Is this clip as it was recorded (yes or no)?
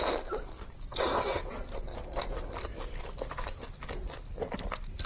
yes